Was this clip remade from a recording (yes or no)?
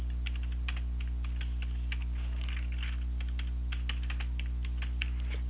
no